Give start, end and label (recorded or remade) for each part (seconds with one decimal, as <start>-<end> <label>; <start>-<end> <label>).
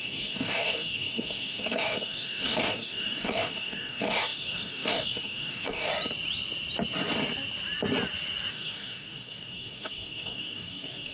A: 0.0-5.9 remade; 5.9-8.5 recorded; 8.5-11.1 remade